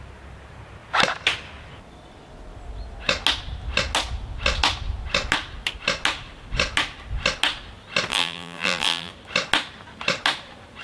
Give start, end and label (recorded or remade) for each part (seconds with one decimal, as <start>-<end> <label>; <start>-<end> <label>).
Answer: 0.0-8.1 recorded; 8.1-9.1 remade; 9.1-10.8 recorded